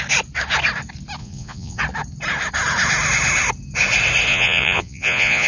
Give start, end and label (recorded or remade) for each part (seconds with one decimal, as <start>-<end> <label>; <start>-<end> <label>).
0.0-1.2 recorded; 1.2-1.8 remade; 1.8-4.3 recorded; 4.3-5.5 remade